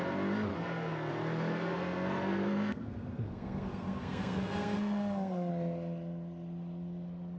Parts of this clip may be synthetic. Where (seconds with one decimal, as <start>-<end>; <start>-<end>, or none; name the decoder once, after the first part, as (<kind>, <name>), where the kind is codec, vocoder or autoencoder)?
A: 0.5-1.1 (codec, SNAC); 1.5-5.5